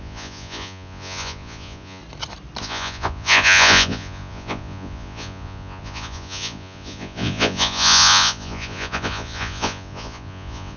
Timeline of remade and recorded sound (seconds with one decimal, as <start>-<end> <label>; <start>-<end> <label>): 0.0-2.0 remade; 2.0-2.6 recorded; 2.6-10.8 remade